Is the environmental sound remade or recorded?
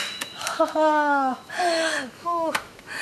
remade